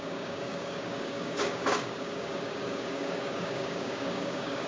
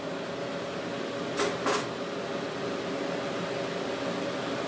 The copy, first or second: first